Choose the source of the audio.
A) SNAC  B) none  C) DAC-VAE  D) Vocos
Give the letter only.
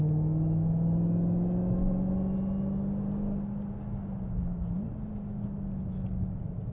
B